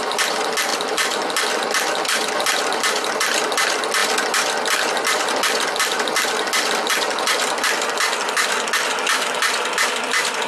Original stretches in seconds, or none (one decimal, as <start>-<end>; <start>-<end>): 0.0-10.5